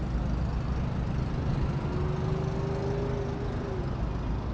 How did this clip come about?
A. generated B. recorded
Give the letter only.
B